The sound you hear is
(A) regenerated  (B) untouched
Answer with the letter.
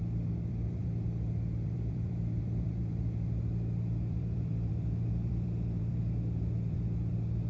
A